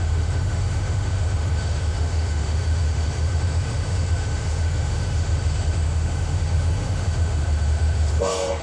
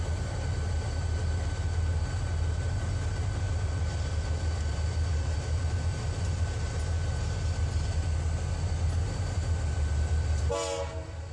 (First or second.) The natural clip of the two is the second